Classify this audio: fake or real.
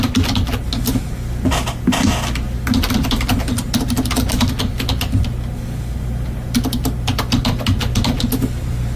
real